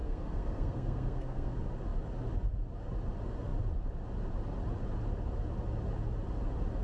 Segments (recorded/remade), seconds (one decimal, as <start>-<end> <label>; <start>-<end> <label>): 0.0-1.5 remade; 1.5-6.8 recorded